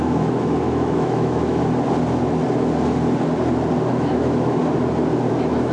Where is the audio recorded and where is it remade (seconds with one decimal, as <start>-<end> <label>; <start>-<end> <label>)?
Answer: 0.0-1.6 remade; 1.6-3.9 recorded; 3.9-4.6 remade; 4.6-5.3 recorded; 5.3-5.7 remade